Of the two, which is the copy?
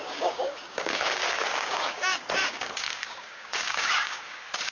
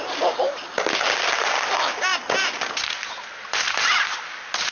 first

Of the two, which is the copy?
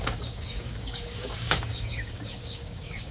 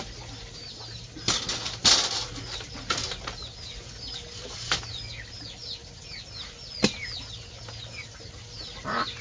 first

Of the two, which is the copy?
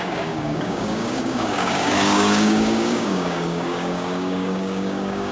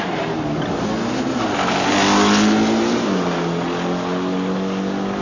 first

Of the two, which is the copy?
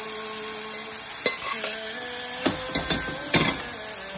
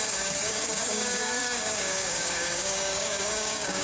second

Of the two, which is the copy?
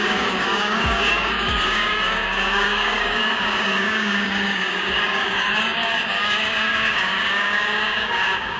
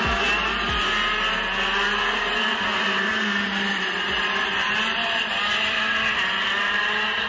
first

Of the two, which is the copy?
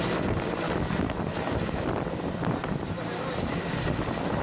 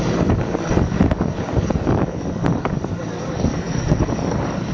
second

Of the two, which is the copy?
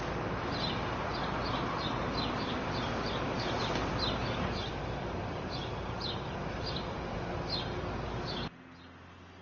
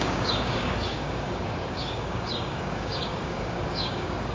second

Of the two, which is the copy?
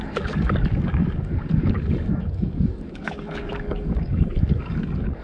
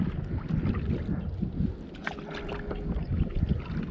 first